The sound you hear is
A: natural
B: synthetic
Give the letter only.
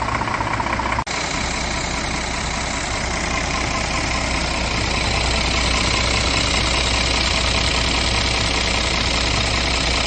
A